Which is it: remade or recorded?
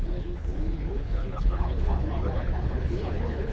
remade